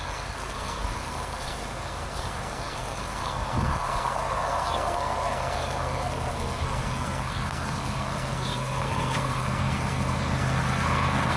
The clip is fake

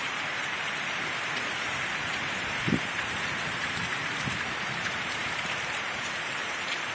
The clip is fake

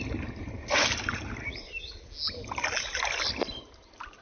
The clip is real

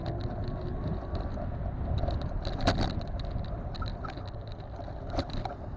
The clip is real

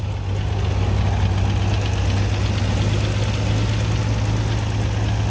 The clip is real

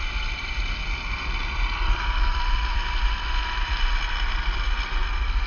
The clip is fake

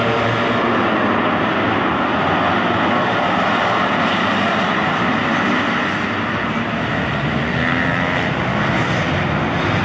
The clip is real